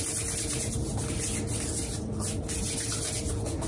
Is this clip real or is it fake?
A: real